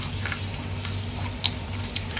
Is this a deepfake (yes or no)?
no